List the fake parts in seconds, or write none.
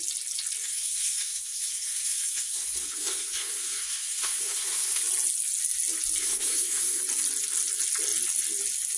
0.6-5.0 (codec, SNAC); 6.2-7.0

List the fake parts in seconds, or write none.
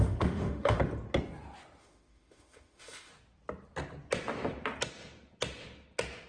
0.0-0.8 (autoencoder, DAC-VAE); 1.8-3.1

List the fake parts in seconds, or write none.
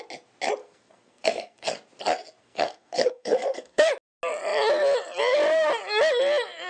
0.6-1.7 (codec, SNAC); 2.4-3.9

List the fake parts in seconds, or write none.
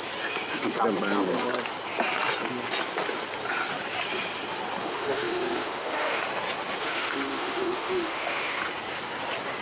4.8-6.2 (autoencoder, DAC-VAE); 6.8-8.6